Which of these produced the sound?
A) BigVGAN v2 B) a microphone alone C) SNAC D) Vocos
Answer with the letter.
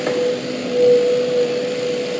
B